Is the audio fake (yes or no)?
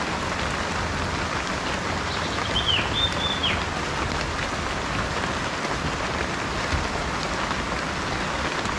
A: no